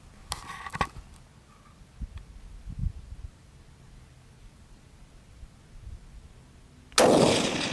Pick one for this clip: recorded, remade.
recorded